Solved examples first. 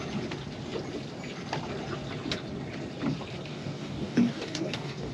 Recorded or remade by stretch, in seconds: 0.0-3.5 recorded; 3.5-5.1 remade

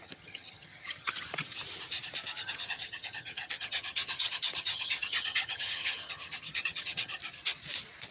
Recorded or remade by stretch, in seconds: 0.0-1.6 remade; 1.6-2.4 recorded; 2.4-7.2 remade; 7.2-8.1 recorded

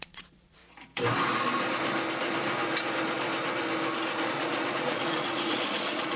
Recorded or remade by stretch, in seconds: 0.0-0.6 remade; 0.6-4.3 recorded; 4.3-6.2 remade